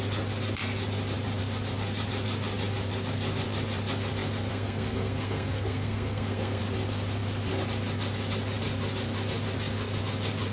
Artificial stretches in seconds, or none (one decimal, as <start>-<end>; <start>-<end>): 4.5-6.6